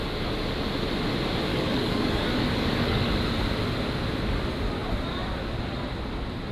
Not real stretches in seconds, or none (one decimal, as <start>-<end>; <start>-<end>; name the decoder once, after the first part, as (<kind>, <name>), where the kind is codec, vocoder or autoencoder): 1.5-3.1 (codec, DAC)